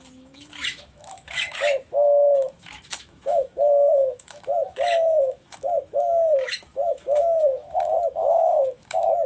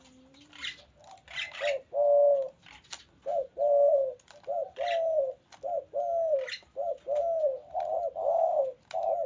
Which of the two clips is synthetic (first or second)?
first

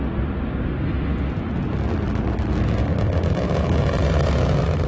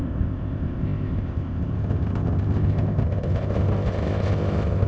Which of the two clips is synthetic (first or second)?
second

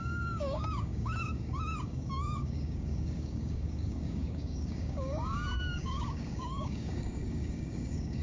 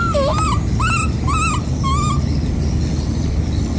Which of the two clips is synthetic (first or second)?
first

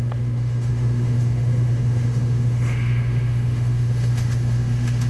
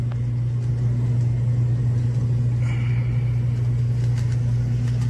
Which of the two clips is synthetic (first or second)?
first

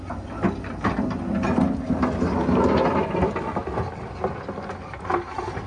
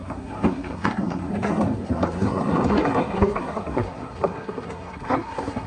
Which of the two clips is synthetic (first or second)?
second